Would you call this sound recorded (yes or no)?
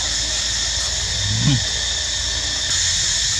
yes